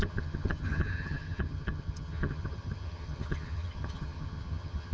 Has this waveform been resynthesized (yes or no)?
yes